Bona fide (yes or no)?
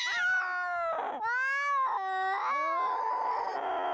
yes